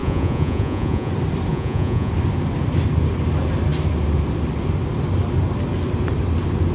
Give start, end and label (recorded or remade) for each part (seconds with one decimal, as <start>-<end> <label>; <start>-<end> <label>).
0.0-1.1 remade; 1.1-1.5 recorded; 1.5-2.1 remade; 2.1-6.7 recorded